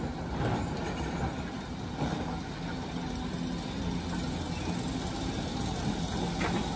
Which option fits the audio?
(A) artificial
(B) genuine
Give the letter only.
B